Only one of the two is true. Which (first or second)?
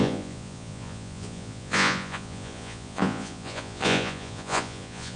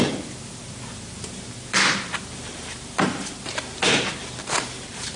second